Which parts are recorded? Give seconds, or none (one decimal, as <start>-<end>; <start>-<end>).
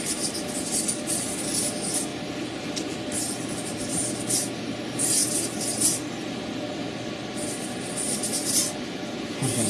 0.0-9.7